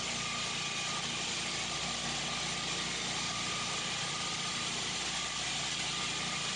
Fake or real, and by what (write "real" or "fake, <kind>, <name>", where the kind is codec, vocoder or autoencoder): real